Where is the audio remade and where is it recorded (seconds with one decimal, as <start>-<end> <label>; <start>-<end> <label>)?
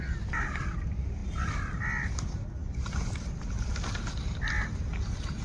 0.0-5.4 recorded